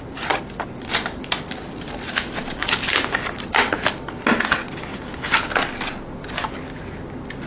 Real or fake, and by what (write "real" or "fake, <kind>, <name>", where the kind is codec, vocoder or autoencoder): real